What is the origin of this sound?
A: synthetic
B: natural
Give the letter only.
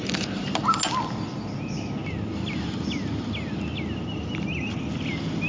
B